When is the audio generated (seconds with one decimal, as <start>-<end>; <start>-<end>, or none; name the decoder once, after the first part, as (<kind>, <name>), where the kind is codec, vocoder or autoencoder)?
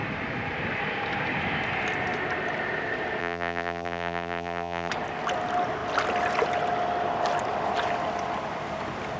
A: 3.2-4.9 (vocoder, BigVGAN v2)